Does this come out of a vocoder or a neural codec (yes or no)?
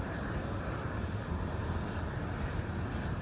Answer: no